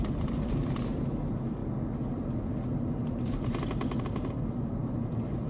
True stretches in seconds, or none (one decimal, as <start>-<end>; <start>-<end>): 0.0-5.5

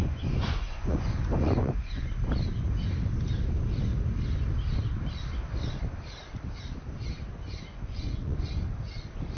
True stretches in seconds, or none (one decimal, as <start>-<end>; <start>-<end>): 2.1-7.7; 8.5-9.4

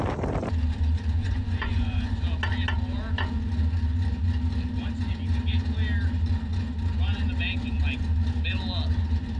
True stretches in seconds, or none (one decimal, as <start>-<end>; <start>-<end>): 0.0-1.2; 2.2-9.4